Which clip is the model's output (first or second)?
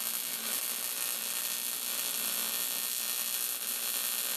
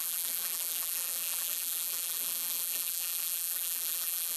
second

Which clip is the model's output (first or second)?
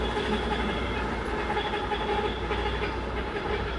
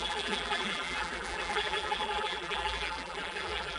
second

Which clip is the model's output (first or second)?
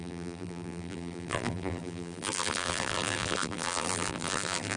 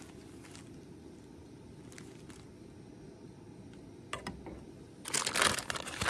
first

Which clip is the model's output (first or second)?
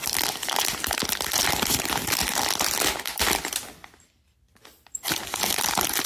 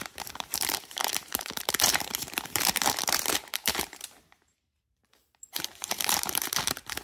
second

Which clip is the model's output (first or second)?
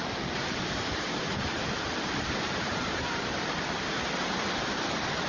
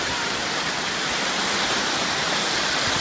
first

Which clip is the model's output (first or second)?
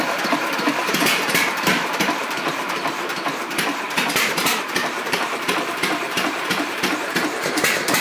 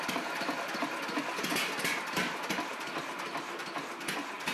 first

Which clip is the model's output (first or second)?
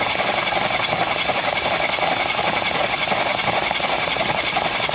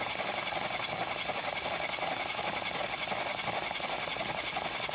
first